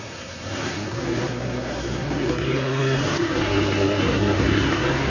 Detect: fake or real fake